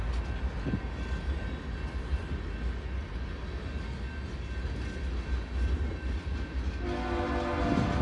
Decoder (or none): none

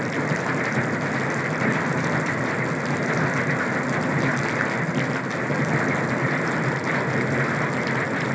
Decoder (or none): none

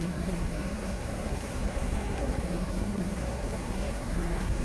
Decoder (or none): codec, SNAC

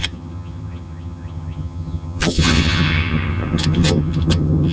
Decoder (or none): vocoder, HiFi-GAN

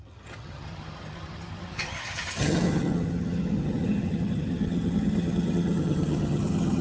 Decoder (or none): vocoder, HiFi-GAN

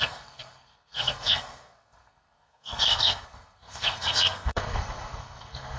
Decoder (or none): codec, SNAC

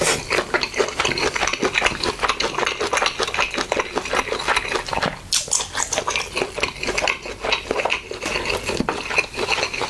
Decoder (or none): none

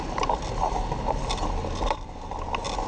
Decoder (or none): none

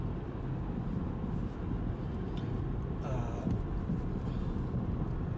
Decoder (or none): none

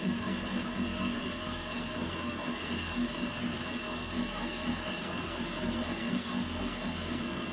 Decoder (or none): codec, SNAC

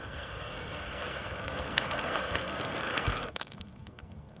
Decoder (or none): codec, SNAC